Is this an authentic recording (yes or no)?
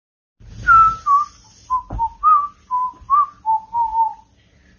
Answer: yes